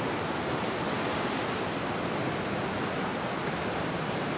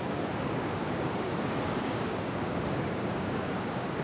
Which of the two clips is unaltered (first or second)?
first